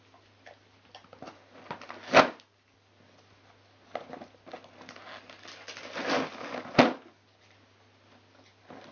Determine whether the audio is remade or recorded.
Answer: recorded